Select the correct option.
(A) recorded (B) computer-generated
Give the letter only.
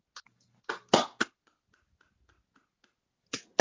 A